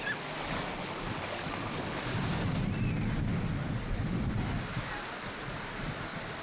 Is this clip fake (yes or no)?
yes